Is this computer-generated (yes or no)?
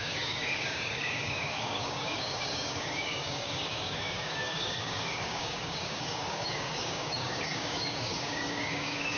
yes